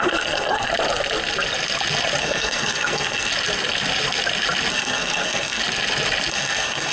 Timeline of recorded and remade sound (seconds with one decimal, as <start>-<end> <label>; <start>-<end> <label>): 0.0-0.7 remade; 0.7-2.2 recorded; 2.2-3.3 remade; 3.3-4.7 recorded; 4.7-5.6 remade; 5.6-6.3 recorded; 6.3-6.9 remade